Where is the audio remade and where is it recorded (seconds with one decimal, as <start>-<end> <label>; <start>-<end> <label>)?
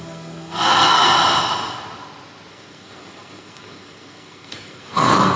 0.0-1.1 remade; 1.1-2.5 recorded; 2.5-5.4 remade